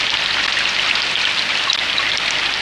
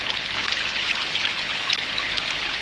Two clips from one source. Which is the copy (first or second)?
second